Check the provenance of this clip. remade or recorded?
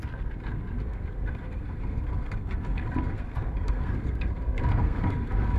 remade